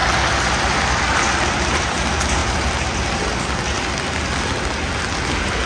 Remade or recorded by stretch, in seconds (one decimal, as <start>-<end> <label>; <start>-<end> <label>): 0.0-5.7 recorded